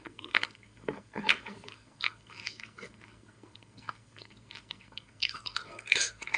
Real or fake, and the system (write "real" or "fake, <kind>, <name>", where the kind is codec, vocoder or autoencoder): fake, codec, SNAC